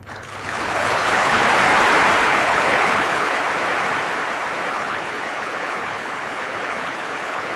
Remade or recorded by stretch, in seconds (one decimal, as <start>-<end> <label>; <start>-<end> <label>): 0.0-1.4 remade; 1.4-2.2 recorded; 2.2-3.4 remade; 3.4-4.7 recorded; 4.7-7.6 remade